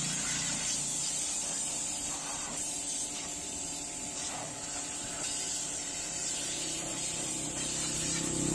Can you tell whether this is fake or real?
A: fake